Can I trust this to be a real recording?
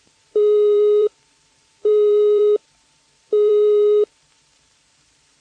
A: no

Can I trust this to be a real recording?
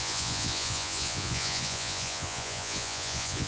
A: no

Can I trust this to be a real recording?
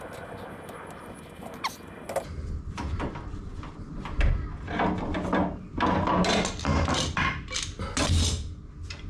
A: yes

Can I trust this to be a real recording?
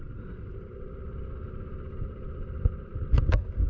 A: no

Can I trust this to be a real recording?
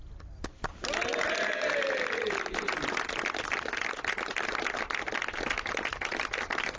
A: yes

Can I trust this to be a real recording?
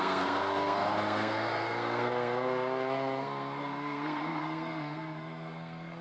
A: no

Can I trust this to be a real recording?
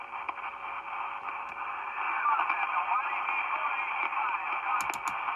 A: yes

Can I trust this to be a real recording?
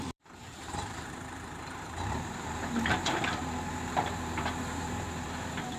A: no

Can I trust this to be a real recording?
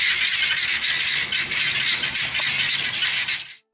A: yes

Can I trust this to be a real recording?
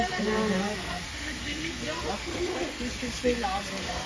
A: no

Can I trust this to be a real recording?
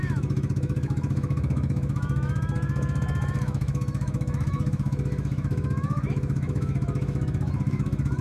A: no